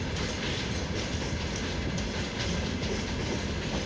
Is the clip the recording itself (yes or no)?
yes